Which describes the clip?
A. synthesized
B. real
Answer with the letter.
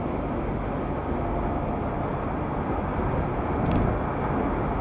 B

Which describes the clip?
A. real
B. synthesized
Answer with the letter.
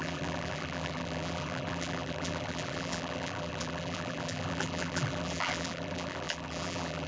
B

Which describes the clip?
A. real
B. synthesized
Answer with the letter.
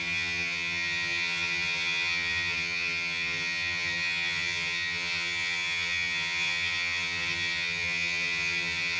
B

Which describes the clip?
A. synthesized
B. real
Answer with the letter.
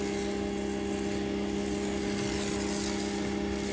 B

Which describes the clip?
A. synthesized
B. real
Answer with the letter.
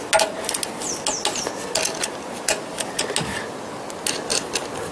B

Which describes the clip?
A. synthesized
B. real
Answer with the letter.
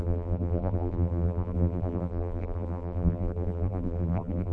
A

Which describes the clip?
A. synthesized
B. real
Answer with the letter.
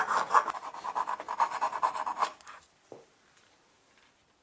B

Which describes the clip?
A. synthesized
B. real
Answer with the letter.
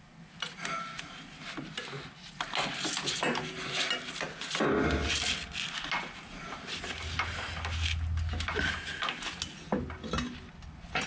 B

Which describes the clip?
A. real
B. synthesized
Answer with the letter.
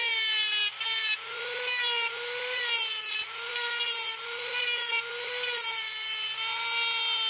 A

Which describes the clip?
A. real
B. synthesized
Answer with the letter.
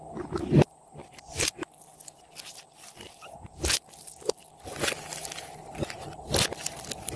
A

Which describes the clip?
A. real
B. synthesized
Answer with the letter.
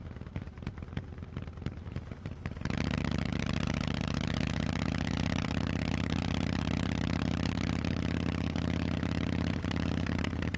B